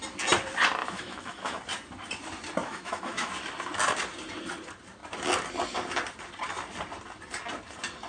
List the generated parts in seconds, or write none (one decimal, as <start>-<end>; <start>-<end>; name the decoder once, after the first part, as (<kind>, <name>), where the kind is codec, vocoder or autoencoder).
0.8-1.6 (autoencoder, DAC-VAE); 2.6-3.3